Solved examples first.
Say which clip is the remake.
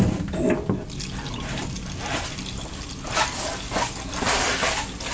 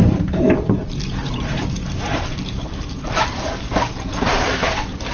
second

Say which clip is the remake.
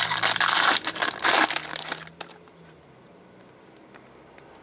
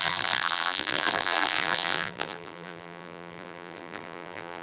second